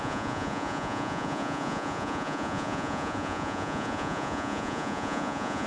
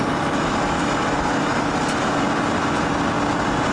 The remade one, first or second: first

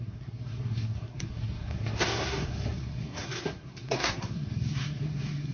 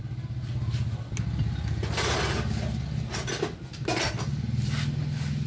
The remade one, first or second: first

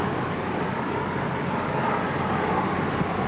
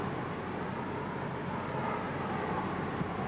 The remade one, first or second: first